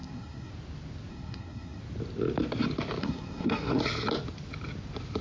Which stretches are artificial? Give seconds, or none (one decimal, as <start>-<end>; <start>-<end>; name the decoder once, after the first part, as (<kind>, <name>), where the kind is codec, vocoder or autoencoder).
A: 0.0-0.5 (codec, SNAC); 1.1-1.8; 3.0-3.8